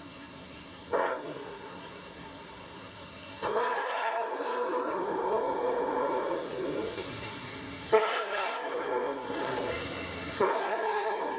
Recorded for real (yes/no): no